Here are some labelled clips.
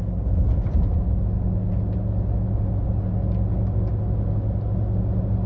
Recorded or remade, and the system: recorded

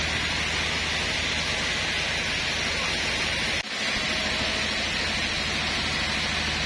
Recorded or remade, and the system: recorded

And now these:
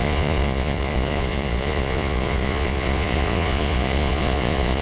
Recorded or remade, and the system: remade, vocoder, Vocos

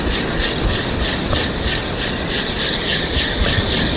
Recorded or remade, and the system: recorded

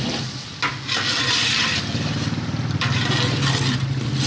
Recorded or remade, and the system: recorded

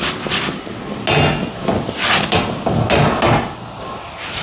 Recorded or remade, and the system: recorded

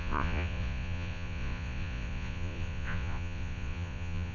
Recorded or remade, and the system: remade, vocoder, Vocos